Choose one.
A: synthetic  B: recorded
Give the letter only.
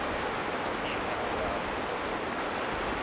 B